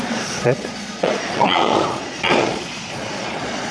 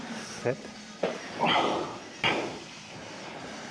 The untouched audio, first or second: second